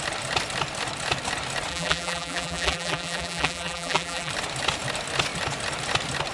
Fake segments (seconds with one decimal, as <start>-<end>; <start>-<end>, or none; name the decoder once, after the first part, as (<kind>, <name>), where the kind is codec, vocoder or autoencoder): 1.7-4.3 (vocoder, BigVGAN v2)